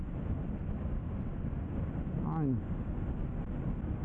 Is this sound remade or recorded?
recorded